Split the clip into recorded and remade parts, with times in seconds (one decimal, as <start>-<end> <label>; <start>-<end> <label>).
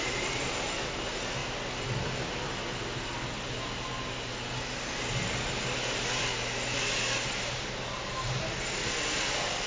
0.0-9.7 recorded